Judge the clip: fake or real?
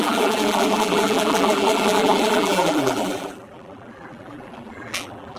fake